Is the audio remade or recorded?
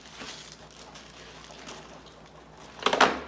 recorded